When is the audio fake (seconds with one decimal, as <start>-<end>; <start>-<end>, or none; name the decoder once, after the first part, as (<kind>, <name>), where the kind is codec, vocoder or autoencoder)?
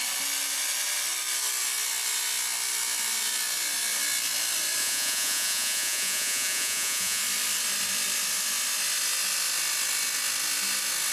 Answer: 4.8-7.2 (vocoder, Vocos)